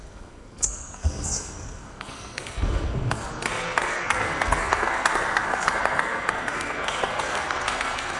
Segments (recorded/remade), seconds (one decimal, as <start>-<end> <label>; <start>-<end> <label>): 0.0-8.2 remade